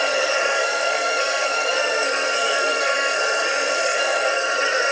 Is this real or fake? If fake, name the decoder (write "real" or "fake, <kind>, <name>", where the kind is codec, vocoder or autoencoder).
fake, codec, SNAC